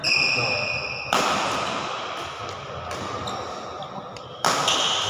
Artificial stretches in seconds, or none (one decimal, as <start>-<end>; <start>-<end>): 0.0-3.1